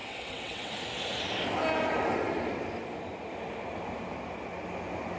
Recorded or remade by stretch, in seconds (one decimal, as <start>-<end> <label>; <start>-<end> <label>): 0.0-0.7 remade; 0.7-5.2 recorded